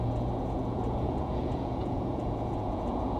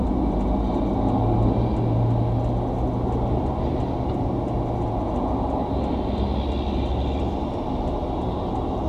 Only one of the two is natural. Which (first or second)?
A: second